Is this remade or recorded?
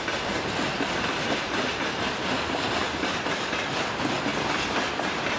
recorded